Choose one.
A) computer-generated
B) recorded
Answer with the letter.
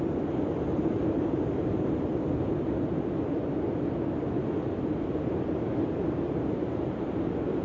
B